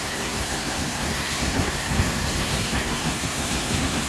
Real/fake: fake